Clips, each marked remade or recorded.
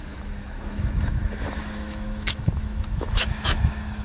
remade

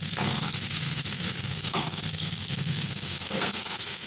remade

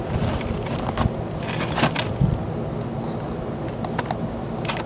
recorded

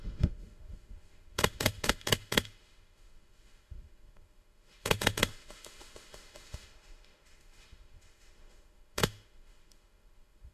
remade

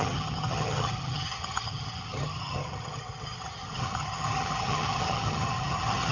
remade